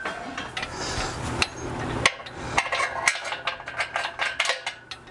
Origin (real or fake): real